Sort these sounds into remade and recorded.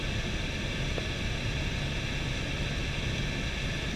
remade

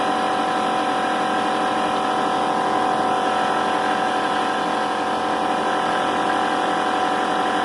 recorded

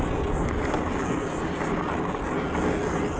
recorded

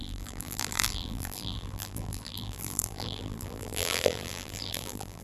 remade